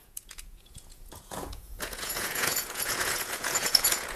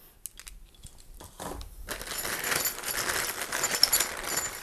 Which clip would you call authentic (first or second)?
second